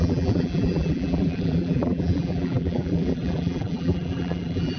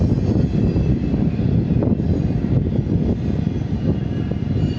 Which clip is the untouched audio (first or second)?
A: second